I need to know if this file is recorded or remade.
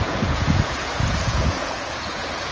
remade